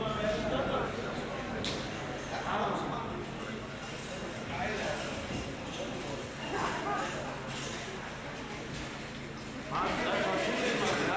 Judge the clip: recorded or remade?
recorded